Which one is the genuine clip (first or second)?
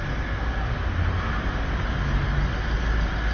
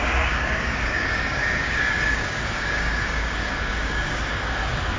first